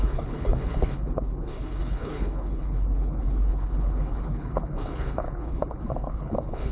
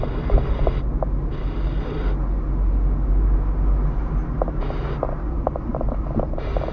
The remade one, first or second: first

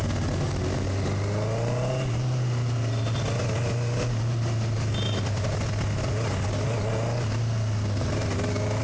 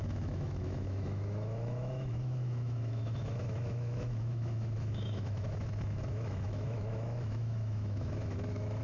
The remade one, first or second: second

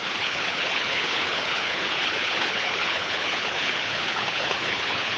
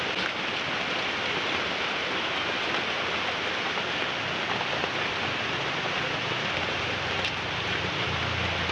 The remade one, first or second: first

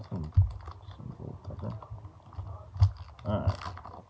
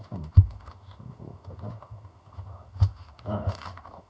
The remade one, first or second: second